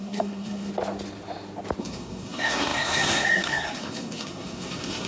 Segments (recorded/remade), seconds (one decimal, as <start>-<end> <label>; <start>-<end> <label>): 0.0-0.7 remade; 0.7-1.8 recorded; 1.8-5.1 remade